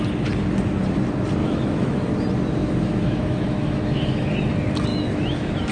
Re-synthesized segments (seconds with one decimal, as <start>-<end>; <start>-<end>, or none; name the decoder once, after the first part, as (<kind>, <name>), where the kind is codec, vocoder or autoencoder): 1.4-2.1 (autoencoder, DAC-VAE); 2.6-4.3; 4.9-5.7